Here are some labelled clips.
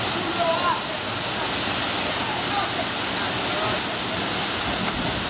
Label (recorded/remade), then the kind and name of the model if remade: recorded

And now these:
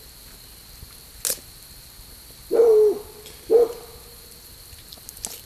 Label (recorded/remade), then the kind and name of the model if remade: recorded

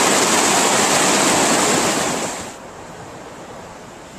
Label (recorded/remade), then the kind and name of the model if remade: recorded